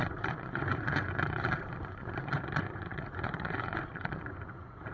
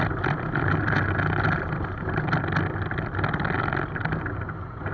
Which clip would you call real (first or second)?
second